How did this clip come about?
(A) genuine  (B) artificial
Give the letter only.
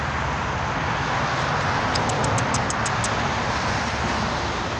A